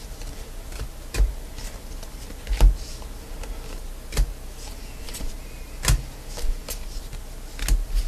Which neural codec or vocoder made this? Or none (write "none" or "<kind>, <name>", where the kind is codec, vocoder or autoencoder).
none